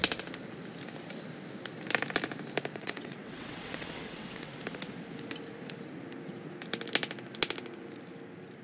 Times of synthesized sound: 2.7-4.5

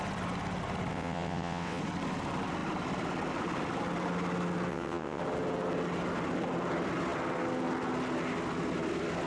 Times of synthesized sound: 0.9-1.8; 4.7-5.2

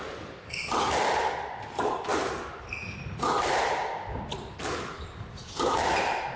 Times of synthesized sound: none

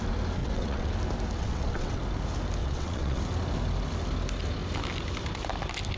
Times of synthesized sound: 0.4-0.9; 1.4-2.0; 2.6-3.2

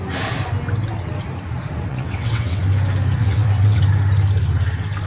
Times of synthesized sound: 1.9-2.6; 3.2-3.8

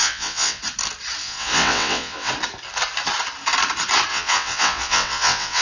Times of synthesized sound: 0.0-0.6; 1.2-2.3; 4.1-5.6

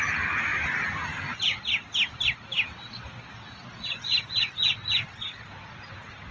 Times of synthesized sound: none

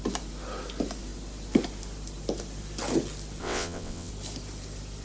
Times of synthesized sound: 3.4-4.1